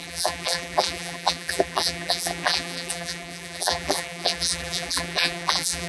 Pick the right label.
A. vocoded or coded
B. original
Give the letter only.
A